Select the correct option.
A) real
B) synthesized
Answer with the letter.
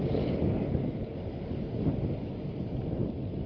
A